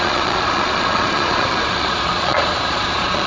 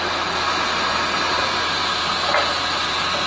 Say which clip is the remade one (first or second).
first